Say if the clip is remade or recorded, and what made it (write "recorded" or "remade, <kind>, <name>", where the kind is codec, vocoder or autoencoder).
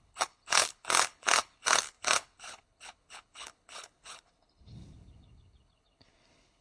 remade, codec, HILCodec